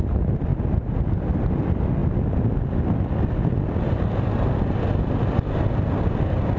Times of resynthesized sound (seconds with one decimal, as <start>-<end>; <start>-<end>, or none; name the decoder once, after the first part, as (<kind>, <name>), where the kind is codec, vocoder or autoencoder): 0.0-0.5 (vocoder, BigVGAN v2); 1.5-2.0; 6.0-6.6